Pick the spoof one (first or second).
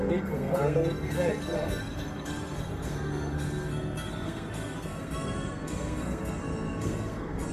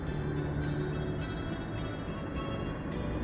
first